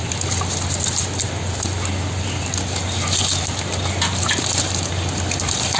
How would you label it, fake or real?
real